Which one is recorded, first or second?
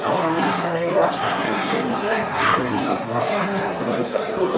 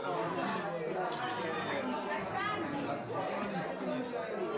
second